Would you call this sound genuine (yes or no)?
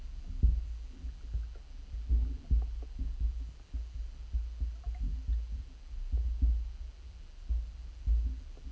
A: yes